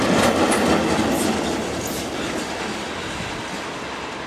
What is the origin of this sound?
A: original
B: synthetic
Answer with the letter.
A